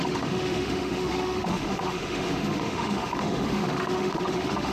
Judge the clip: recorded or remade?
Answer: remade